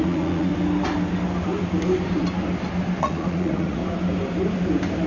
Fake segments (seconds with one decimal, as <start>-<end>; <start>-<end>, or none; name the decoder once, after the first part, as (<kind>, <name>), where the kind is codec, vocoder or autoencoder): 0.0-0.5 (vocoder, Vocos); 3.0-3.8